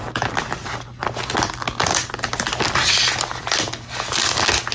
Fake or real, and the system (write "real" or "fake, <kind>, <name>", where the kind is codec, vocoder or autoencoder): real